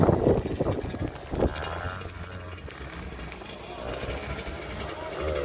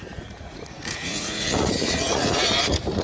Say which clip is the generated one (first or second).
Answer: second